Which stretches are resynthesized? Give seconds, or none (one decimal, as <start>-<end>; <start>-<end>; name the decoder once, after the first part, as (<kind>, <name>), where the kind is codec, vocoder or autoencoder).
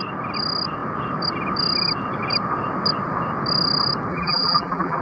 4.1-5.0 (vocoder, BigVGAN v2)